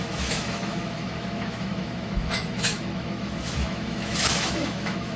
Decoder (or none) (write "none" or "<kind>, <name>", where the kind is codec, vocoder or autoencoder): autoencoder, DAC-VAE